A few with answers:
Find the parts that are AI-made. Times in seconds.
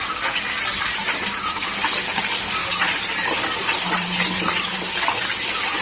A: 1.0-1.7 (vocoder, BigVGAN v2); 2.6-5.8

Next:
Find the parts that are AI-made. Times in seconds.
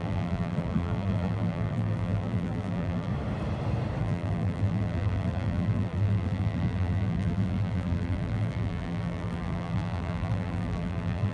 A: 0.0-3.1 (vocoder, BigVGAN v2); 4.0-11.3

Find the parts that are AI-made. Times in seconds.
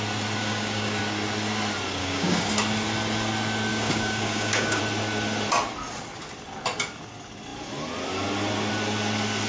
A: 0.4-1.0 (codec, DAC); 2.0-2.5; 3.7-4.8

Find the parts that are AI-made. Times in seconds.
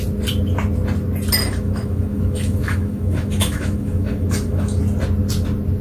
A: 1.4-4.8 (autoencoder, DAC-VAE)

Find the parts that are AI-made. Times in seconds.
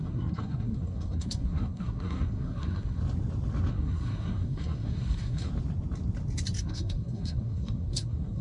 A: 0.0-3.0 (codec, SNAC); 3.7-5.5; 6.6-8.4